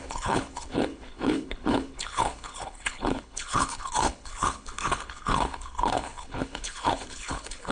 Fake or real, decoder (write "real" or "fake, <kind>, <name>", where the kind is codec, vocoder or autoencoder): fake, codec, HILCodec